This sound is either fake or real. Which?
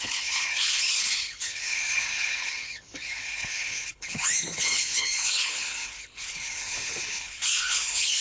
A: fake